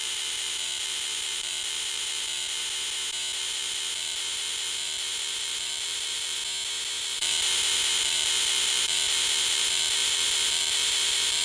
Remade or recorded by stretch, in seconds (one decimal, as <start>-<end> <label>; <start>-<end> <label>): 0.0-2.6 remade; 2.6-3.4 recorded; 3.4-6.4 remade; 6.4-7.0 recorded; 7.0-11.4 remade